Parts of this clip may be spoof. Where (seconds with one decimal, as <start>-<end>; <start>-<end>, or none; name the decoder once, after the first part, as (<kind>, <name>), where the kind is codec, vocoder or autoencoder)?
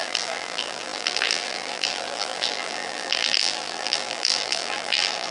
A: 0.0-5.3 (vocoder, BigVGAN v2)